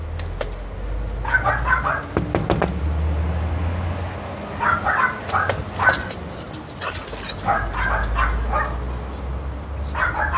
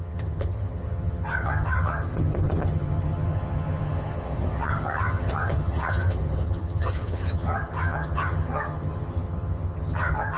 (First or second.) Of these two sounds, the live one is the first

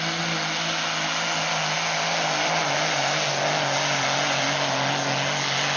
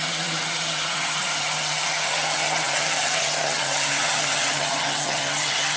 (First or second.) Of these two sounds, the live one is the first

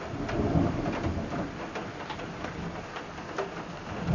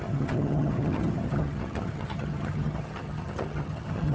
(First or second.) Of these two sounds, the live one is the first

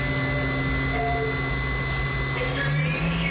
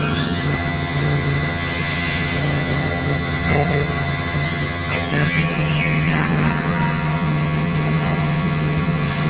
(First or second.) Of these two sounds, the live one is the first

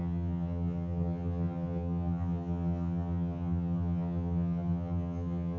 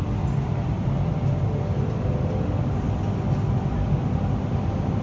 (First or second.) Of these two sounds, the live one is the second